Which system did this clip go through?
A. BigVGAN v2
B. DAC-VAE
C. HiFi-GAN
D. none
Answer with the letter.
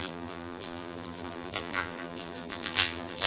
A